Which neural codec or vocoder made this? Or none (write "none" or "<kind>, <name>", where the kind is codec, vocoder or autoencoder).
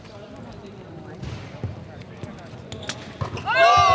none